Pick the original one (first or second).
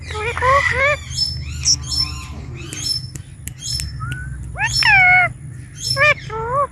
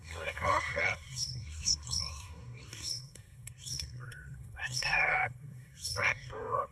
first